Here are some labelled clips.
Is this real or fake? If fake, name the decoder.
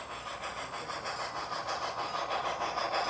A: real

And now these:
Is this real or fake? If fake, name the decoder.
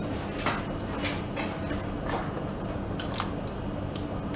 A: real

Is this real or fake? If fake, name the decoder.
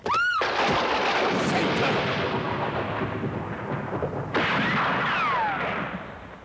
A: real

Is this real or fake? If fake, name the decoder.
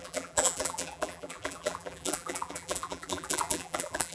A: fake, vocoder, BigVGAN v2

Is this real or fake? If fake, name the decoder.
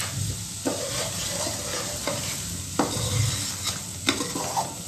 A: real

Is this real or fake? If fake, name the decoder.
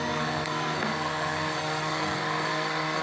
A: fake, codec, SNAC